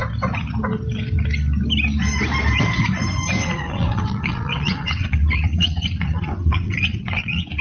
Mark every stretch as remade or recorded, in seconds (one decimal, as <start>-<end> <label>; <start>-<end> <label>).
0.0-3.4 recorded; 3.4-7.6 remade